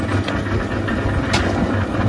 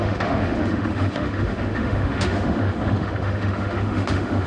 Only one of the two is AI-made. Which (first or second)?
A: second